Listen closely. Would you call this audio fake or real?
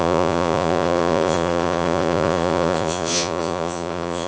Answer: fake